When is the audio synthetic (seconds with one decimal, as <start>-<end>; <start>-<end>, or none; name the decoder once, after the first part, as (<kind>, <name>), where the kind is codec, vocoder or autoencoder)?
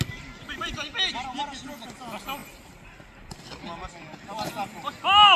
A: none